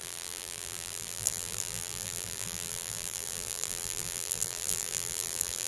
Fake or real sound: fake